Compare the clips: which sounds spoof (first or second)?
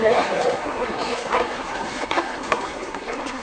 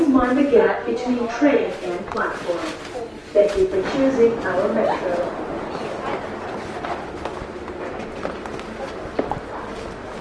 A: first